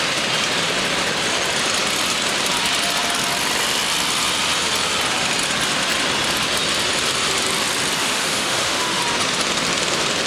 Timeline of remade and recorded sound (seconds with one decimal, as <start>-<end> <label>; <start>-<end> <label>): 0.0-8.0 recorded; 8.0-9.0 remade; 9.0-10.3 recorded

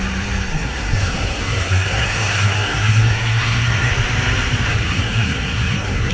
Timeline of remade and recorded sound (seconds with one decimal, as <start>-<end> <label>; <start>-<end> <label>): 0.0-0.5 recorded; 0.5-3.9 remade; 3.9-4.7 recorded; 4.7-6.1 remade

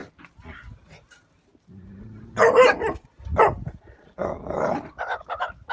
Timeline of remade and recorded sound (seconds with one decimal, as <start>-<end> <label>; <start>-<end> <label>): 0.0-5.7 recorded